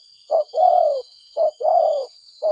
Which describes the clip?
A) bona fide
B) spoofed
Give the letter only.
B